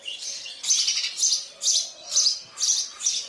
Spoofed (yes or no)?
no